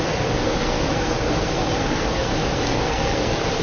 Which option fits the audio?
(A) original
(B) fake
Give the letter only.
B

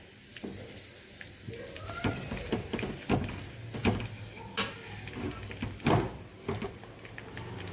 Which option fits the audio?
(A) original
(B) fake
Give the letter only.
A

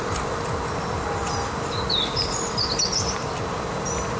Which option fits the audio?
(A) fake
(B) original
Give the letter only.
B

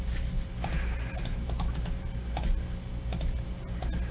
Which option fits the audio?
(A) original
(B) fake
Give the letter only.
A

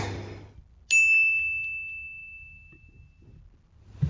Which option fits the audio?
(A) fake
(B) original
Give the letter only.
B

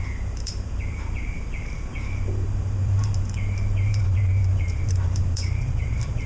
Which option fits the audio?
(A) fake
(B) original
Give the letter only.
A